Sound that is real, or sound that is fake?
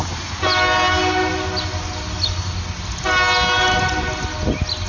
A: real